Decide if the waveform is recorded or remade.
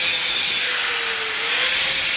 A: recorded